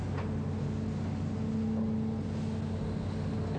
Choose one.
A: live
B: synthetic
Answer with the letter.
A